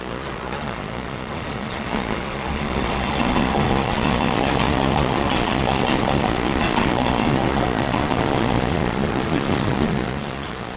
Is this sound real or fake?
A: fake